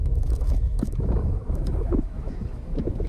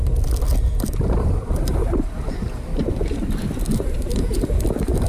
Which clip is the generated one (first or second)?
first